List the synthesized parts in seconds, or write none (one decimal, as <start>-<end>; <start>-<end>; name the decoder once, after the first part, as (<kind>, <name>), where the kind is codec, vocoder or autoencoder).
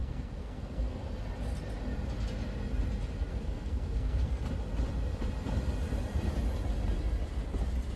0.0-1.0 (codec, SNAC); 3.3-4.4